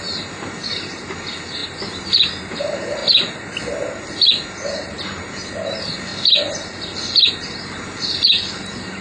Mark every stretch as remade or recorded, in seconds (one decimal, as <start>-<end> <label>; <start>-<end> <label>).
0.0-3.0 remade; 3.0-4.7 recorded; 4.7-6.1 remade; 6.1-7.3 recorded; 7.3-9.0 remade